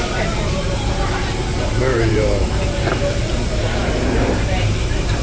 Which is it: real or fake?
fake